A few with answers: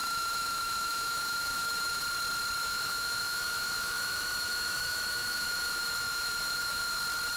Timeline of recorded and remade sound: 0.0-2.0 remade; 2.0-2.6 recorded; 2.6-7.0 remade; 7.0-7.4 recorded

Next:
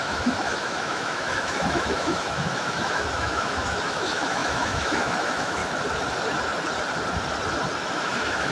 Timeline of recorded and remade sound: 0.0-5.6 remade; 5.6-7.9 recorded; 7.9-8.5 remade

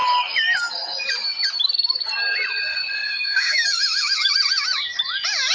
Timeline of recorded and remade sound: 0.0-3.0 recorded; 3.0-4.3 remade; 4.3-5.5 recorded

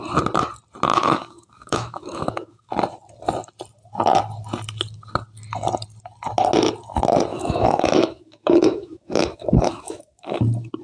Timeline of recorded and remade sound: 0.0-0.9 recorded; 0.9-2.7 remade; 2.7-7.3 recorded; 7.3-10.4 remade; 10.4-10.8 recorded

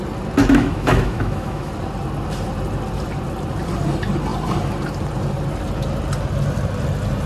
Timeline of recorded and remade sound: 0.0-0.4 recorded; 0.4-1.7 remade; 1.7-7.3 recorded

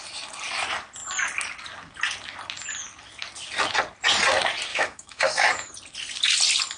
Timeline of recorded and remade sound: 0.0-4.7 recorded; 4.7-5.7 remade; 5.7-6.8 recorded

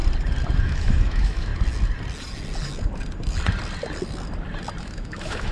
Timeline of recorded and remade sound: 0.0-0.6 recorded; 0.6-1.5 remade; 1.5-4.8 recorded; 4.8-5.5 remade

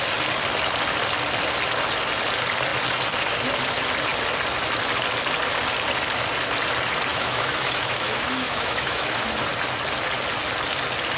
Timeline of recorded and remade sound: 0.0-7.1 recorded; 7.1-9.3 remade; 9.3-11.2 recorded